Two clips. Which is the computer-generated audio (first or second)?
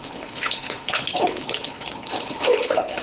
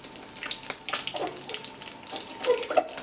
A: first